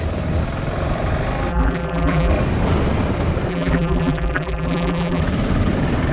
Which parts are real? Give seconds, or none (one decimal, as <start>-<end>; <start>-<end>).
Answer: 0.0-1.5; 2.3-3.5; 5.2-6.1